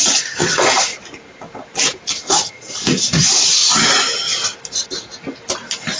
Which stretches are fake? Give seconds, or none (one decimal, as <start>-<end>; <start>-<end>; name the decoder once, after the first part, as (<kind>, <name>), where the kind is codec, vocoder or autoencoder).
0.0-0.9 (vocoder, Vocos); 2.5-3.6